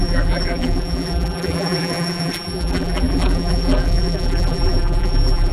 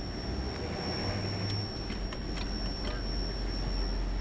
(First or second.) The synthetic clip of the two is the first